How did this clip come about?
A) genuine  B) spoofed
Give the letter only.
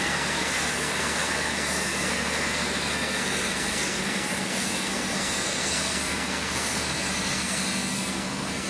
B